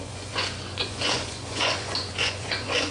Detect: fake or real fake